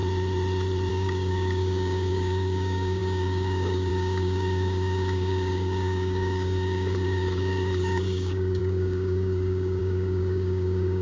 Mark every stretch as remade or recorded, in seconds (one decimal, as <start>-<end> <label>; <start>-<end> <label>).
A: 0.0-0.9 recorded; 0.9-11.0 remade